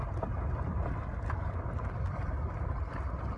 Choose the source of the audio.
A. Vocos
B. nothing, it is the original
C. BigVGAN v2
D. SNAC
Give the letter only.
B